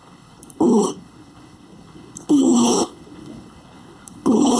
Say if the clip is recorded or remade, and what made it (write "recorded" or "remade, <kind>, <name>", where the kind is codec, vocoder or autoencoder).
remade, codec, HILCodec